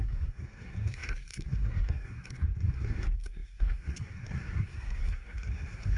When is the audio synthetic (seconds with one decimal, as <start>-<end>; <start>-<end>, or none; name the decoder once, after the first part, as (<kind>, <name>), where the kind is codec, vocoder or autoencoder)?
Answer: 0.0-6.0 (codec, SNAC)